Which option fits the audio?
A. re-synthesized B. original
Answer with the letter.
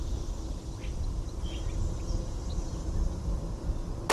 B